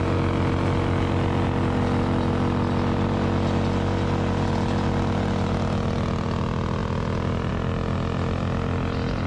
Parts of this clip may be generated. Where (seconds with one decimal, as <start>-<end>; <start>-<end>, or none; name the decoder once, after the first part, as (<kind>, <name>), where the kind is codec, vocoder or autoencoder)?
none